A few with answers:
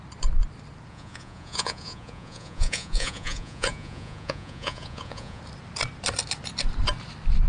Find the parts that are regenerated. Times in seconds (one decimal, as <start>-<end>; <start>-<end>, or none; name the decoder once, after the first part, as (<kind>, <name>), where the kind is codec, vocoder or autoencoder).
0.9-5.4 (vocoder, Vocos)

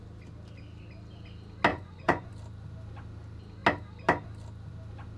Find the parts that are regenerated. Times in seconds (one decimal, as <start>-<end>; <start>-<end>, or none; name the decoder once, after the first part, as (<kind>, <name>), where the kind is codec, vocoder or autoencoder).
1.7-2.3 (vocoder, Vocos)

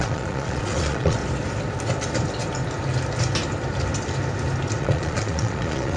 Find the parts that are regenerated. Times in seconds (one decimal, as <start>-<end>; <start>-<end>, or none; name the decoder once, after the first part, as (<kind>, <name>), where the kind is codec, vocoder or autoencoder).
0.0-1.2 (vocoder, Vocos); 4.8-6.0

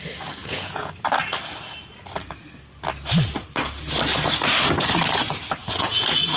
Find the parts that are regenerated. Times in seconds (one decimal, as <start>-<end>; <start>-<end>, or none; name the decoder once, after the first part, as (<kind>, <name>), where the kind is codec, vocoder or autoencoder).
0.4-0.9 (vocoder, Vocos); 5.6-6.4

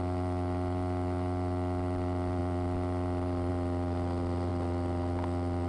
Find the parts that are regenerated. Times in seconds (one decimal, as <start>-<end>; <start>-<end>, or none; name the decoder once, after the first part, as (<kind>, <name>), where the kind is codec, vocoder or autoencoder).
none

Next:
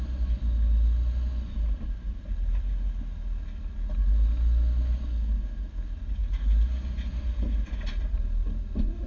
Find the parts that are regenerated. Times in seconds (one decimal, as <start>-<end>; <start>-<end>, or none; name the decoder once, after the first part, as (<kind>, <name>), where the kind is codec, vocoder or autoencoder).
none

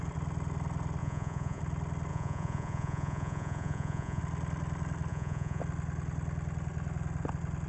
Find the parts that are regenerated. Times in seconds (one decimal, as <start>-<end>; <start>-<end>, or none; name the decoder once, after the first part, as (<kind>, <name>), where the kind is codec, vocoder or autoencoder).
1.0-1.6 (vocoder, Vocos); 2.1-4.2; 5.1-5.6